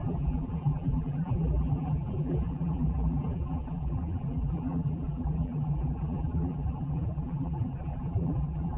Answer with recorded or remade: remade